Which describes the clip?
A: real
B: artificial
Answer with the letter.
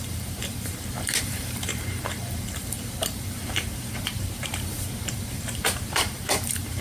B